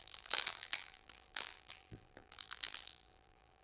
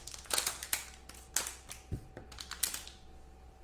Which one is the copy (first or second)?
first